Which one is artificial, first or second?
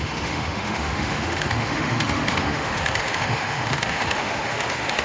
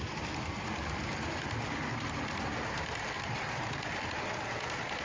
first